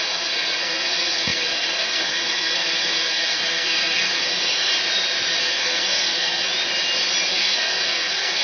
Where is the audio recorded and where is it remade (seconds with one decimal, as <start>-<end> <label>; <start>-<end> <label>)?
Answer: 0.0-4.7 remade; 4.7-5.4 recorded; 5.4-6.5 remade; 6.5-7.3 recorded; 7.3-8.4 remade